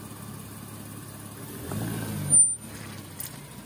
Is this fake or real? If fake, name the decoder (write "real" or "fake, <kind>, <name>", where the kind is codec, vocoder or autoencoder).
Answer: real